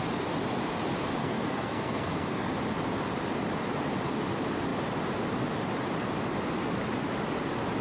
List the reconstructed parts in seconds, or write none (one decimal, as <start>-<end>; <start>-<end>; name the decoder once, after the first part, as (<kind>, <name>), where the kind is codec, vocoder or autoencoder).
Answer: 1.2-2.5 (codec, SNAC)